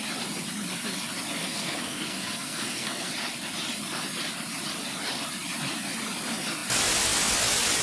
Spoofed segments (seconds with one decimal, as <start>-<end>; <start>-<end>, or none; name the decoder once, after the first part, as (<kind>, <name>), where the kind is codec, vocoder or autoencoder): 1.4-3.1 (codec, SNAC)